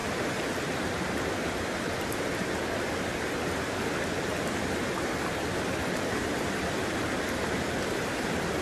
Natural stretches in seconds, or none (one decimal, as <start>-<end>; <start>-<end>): 0.0-8.6